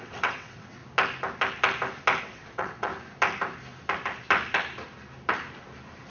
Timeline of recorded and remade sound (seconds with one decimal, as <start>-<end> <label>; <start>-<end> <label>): 0.0-0.8 remade; 0.8-2.2 recorded; 2.2-2.9 remade; 2.9-6.1 recorded